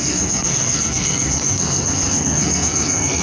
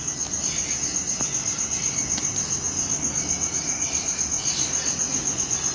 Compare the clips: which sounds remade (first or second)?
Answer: first